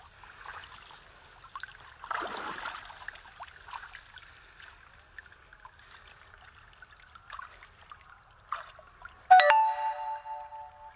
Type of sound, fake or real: real